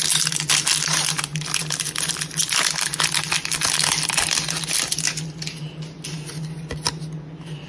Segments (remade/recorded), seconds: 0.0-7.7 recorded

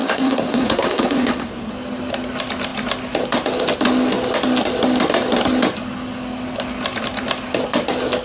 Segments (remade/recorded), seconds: 0.0-1.7 remade; 1.7-8.2 recorded